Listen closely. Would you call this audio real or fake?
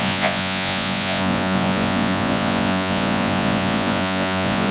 fake